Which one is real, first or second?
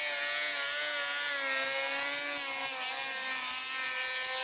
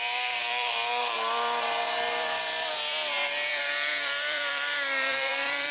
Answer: first